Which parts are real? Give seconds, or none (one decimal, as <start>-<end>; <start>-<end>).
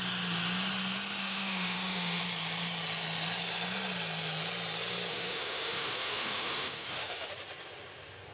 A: 0.0-1.2; 2.2-5.1; 7.3-8.3